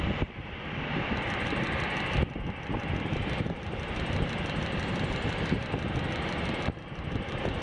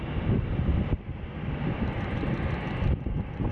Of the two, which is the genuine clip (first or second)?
second